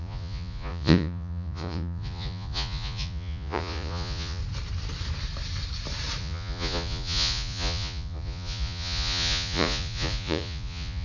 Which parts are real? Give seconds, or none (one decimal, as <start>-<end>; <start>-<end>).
4.4-6.2